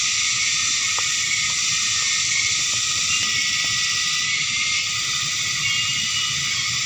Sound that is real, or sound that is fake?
real